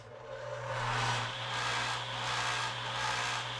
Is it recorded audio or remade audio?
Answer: recorded